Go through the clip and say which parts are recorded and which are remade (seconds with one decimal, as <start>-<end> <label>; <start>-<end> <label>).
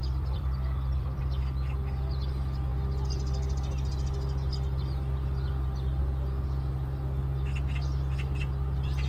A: 0.0-1.2 remade; 1.2-9.1 recorded